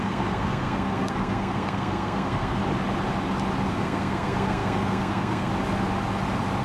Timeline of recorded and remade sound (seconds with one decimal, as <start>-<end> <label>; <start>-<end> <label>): 0.0-2.6 remade; 2.6-3.7 recorded; 3.7-5.5 remade; 5.5-6.6 recorded